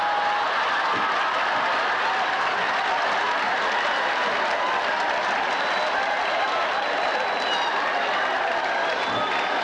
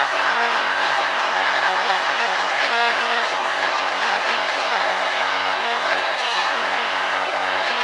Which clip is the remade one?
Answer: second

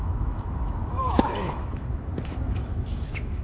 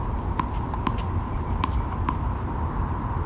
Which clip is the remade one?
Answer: first